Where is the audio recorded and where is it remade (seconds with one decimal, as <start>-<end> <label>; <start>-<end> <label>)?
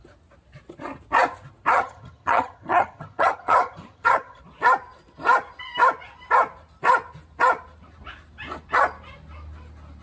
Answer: 0.0-1.7 recorded; 1.7-4.4 remade; 4.4-10.0 recorded